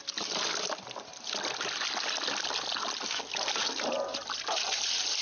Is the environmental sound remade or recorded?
recorded